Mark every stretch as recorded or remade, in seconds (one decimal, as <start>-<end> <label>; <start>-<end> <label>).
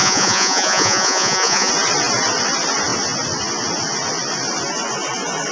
0.0-1.7 remade; 1.7-5.5 recorded